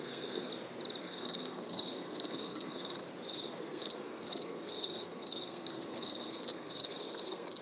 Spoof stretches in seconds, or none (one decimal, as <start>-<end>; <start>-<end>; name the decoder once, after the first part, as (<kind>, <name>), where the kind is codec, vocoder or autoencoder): 0.0-0.5 (codec, SNAC); 1.0-3.0; 3.5-7.6